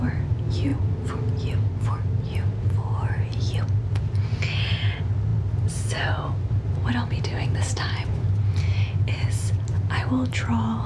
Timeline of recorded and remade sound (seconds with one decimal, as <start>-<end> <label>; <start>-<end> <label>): 0.0-10.9 recorded

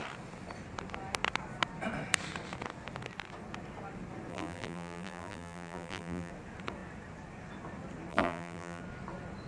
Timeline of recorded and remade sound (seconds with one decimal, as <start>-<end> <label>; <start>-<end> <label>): 0.0-4.3 recorded; 4.3-6.3 remade; 6.3-8.1 recorded; 8.1-8.8 remade; 8.8-9.5 recorded